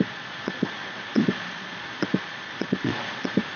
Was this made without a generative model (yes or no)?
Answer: no